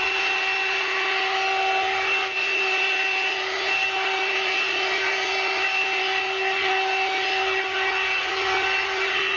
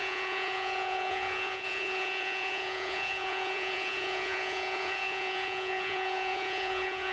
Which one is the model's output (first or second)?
second